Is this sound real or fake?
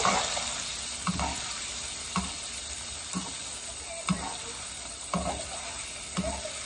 real